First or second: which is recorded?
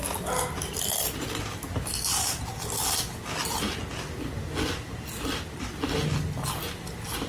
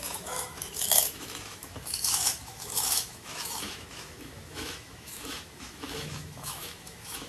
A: first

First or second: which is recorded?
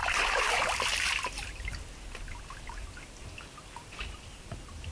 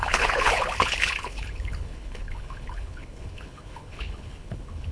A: first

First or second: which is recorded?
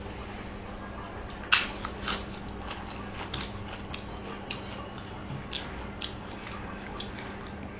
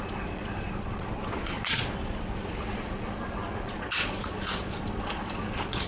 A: first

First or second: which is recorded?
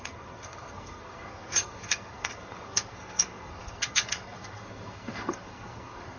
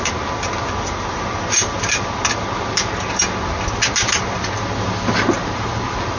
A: second